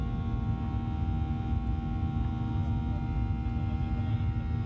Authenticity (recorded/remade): recorded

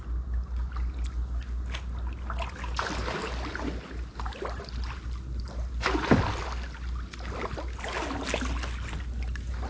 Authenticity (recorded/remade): recorded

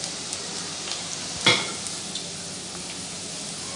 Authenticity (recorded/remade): recorded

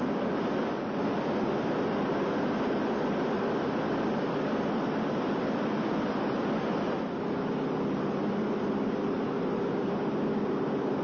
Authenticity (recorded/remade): recorded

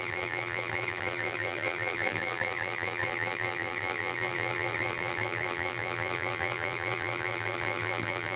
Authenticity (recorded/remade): remade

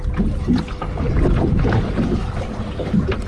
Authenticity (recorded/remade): recorded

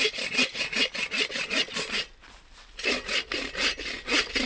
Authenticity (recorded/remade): recorded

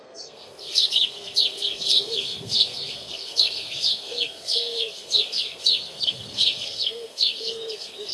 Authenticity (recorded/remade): remade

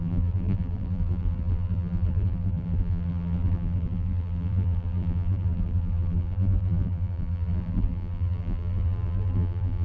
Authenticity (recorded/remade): remade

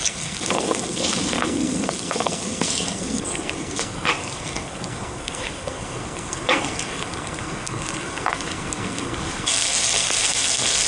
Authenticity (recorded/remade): remade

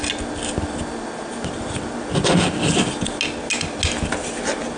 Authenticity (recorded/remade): recorded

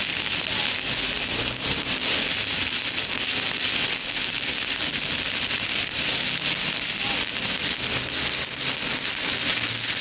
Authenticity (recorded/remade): recorded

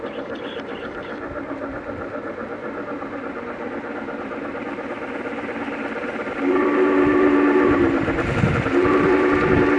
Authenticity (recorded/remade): remade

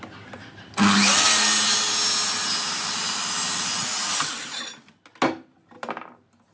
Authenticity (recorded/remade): recorded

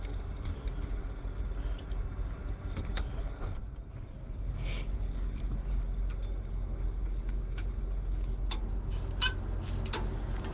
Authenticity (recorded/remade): recorded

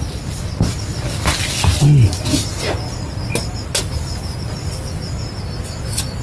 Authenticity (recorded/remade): recorded